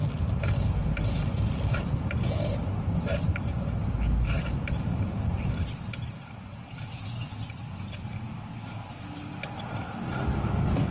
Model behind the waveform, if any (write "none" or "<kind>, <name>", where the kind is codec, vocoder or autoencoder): none